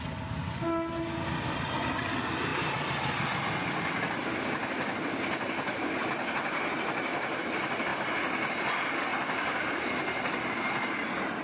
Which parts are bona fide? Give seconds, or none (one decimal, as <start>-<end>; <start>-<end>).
0.0-11.4